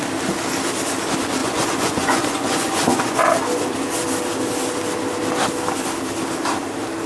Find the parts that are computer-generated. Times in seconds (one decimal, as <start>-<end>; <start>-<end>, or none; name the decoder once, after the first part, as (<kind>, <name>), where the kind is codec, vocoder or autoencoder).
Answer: 1.4-3.2 (vocoder, Vocos)